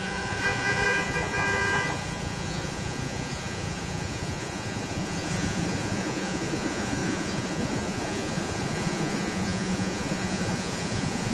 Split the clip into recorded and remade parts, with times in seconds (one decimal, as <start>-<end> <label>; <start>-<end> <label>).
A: 0.0-11.3 remade

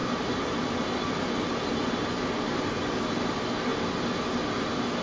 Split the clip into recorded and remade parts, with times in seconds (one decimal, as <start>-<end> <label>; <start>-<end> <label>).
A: 0.0-5.0 recorded